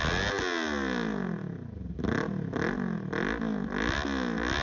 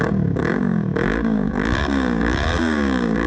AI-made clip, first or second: second